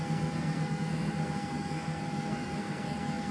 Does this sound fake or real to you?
fake